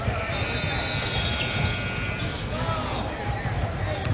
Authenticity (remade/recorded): recorded